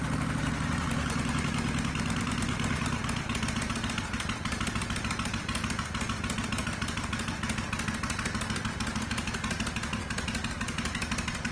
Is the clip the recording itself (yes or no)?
yes